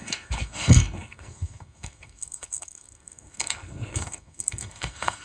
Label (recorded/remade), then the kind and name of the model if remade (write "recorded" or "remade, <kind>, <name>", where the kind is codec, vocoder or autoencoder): remade, codec, SNAC